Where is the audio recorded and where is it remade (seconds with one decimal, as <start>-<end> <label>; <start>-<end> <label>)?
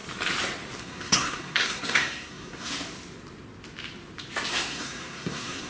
0.0-0.8 recorded; 0.8-2.7 remade; 2.7-4.5 recorded; 4.5-5.7 remade